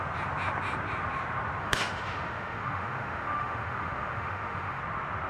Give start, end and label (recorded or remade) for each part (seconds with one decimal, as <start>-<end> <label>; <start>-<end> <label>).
0.0-1.6 recorded; 1.6-4.8 remade; 4.8-5.3 recorded